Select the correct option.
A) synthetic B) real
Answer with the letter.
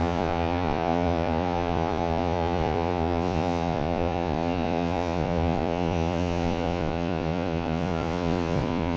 A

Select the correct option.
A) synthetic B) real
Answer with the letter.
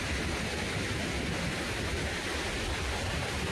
B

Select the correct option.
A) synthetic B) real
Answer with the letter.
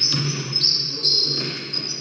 A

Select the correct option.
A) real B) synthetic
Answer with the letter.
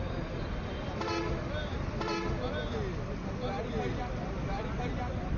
A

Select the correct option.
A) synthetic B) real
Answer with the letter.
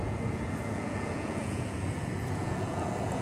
A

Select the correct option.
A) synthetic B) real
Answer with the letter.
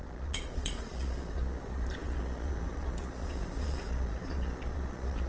A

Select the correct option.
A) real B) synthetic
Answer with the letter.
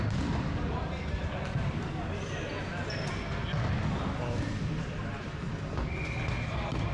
A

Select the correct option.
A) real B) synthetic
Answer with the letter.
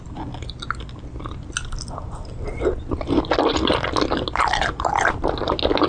A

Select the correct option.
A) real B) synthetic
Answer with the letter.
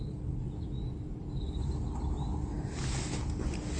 A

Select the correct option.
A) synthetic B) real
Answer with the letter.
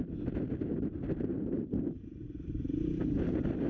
B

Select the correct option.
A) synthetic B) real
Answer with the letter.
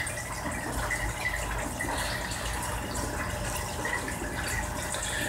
B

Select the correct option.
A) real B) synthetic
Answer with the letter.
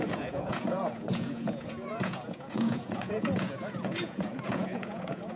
B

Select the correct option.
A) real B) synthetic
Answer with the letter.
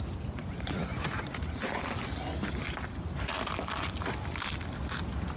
A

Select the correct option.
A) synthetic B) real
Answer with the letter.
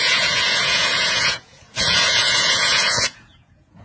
A